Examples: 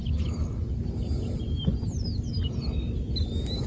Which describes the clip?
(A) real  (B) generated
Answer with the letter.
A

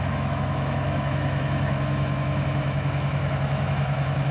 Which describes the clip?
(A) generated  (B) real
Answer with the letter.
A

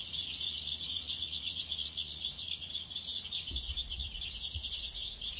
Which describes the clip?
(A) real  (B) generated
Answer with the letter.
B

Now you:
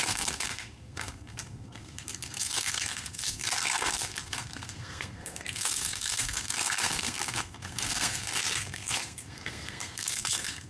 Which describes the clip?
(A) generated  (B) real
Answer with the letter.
A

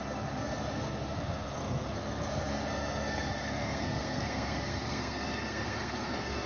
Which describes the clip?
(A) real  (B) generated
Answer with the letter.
B